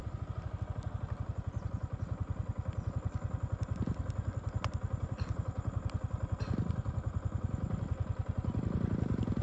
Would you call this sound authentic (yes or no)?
yes